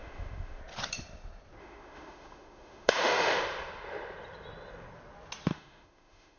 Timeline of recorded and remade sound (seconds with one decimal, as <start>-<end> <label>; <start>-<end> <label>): 0.0-0.6 remade; 0.6-1.6 recorded; 1.6-3.4 remade; 3.4-5.5 recorded; 5.5-6.4 remade